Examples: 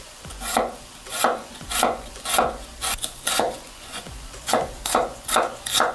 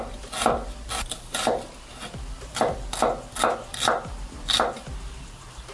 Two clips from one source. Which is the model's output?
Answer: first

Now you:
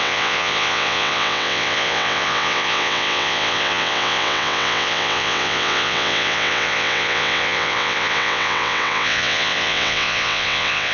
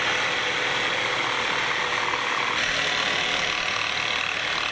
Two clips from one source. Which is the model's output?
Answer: first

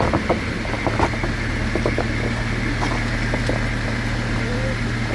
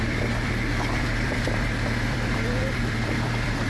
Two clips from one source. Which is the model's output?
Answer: second